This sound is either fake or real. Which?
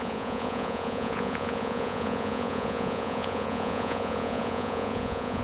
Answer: fake